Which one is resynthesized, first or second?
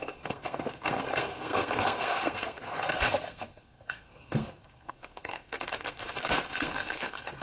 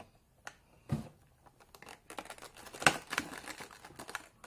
first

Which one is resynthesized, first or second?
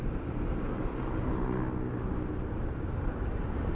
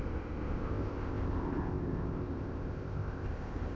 second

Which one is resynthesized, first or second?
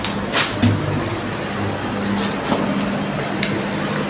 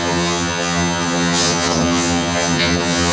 second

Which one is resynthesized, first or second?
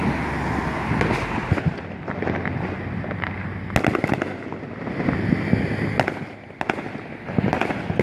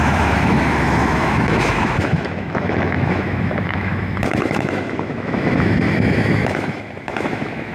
second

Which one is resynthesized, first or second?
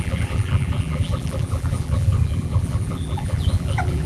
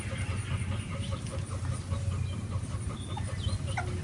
first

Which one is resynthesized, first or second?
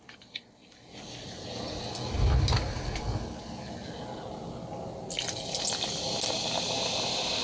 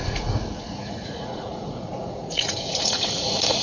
second